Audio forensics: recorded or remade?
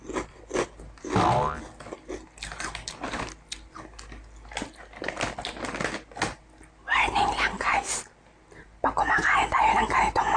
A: recorded